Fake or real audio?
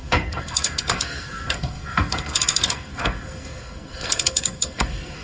fake